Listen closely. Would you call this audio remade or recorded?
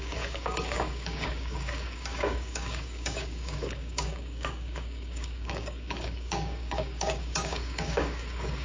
remade